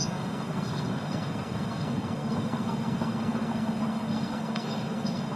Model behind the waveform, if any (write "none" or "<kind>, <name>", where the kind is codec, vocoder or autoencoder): codec, SNAC